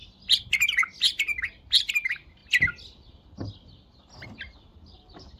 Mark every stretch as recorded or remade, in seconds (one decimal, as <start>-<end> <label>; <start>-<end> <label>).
0.0-1.9 recorded; 1.9-2.4 remade; 2.4-4.7 recorded; 4.7-5.4 remade